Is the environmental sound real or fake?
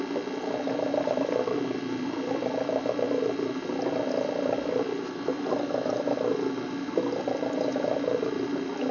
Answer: real